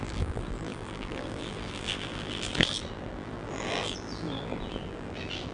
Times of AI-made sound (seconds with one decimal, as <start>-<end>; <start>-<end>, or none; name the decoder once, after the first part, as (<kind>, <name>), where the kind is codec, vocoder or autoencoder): 0.0-5.5 (vocoder, BigVGAN v2)